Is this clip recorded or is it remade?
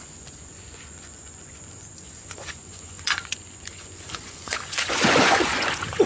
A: remade